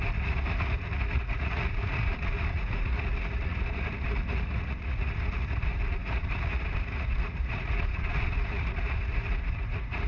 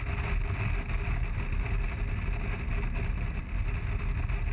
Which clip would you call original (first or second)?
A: second